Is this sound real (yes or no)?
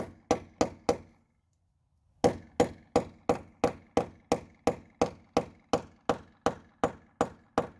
yes